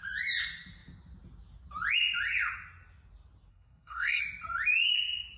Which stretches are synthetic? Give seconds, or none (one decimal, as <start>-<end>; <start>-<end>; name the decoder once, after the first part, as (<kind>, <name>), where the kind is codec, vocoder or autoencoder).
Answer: 3.5-4.2 (codec, SNAC)